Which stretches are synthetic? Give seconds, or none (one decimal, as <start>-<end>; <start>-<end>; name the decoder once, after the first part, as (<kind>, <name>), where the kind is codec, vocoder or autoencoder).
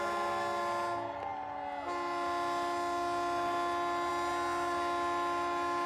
none